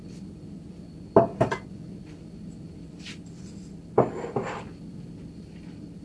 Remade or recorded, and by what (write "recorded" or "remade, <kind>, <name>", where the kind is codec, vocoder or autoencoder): recorded